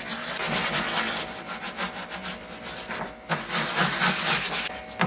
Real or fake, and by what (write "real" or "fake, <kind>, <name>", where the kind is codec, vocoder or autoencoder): real